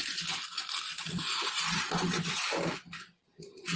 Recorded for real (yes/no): yes